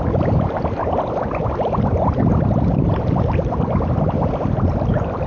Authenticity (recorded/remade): recorded